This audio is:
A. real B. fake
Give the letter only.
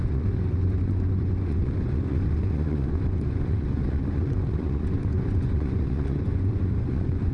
B